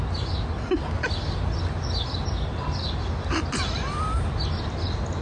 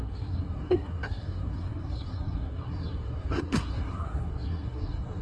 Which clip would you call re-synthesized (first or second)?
second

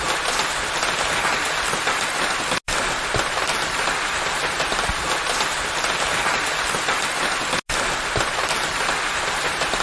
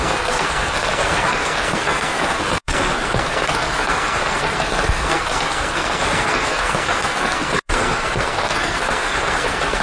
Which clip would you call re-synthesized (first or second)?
second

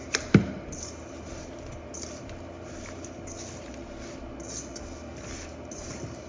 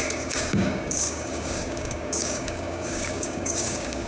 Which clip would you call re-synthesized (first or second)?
second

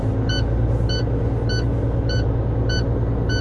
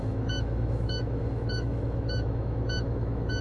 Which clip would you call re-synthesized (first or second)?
second